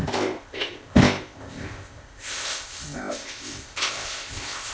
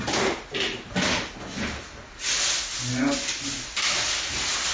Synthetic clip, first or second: first